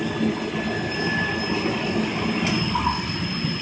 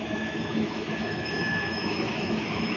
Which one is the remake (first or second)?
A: second